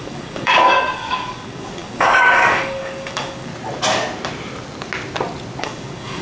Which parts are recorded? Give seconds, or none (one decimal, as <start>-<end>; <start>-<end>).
3.5-5.6